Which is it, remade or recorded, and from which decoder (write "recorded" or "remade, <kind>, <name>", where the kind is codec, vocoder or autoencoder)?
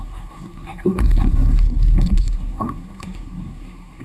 remade, codec, SNAC